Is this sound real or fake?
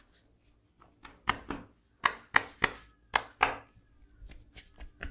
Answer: real